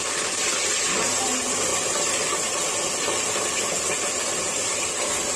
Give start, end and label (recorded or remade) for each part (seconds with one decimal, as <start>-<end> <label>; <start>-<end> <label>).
0.0-5.4 recorded